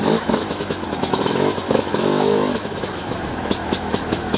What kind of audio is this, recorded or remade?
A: remade